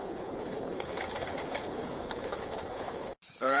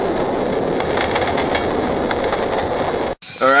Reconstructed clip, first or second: first